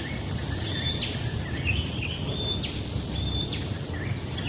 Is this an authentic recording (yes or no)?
yes